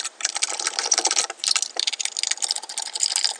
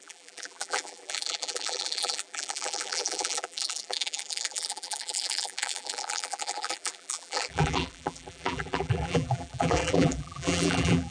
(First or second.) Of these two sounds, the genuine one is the first